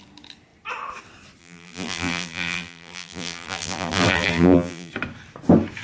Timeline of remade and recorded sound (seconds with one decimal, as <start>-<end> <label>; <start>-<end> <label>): 0.0-1.4 recorded; 1.4-4.9 remade; 4.9-5.8 recorded